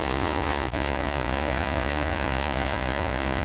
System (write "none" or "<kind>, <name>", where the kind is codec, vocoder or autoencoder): vocoder, Vocos